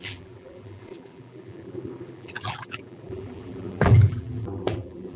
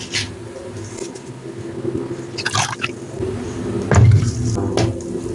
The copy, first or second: first